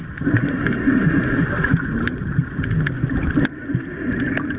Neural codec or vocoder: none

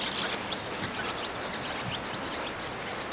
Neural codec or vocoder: none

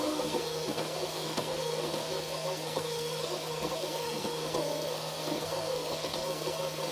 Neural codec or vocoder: codec, SNAC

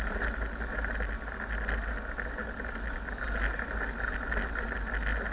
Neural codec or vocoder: none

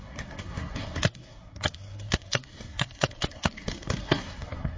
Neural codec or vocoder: codec, SNAC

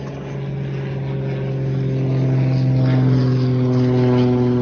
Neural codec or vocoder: none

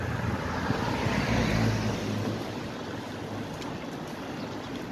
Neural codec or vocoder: none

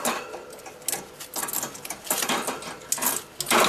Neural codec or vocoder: none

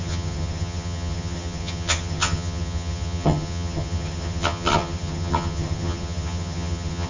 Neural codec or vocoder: vocoder, HiFi-GAN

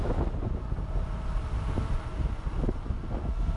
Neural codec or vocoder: none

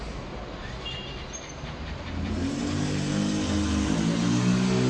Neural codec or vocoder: none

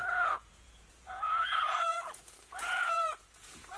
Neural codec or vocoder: vocoder, Vocos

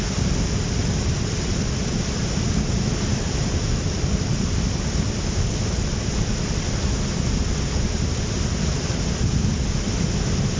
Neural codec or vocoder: none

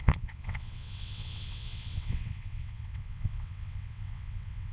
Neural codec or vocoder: vocoder, WaveNeXt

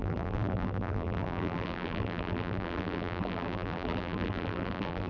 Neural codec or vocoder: vocoder, BigVGAN v2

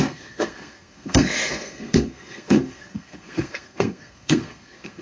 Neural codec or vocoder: codec, SNAC